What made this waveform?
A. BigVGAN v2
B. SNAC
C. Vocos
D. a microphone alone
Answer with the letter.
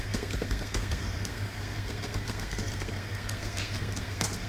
B